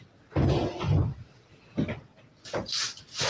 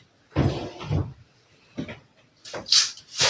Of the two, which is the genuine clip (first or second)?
first